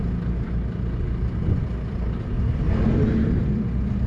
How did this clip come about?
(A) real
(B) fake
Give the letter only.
A